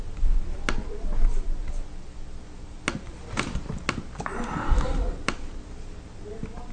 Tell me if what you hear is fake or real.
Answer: real